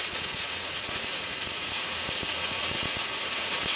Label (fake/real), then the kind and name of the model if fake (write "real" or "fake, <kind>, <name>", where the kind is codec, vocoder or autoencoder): fake, vocoder, Vocos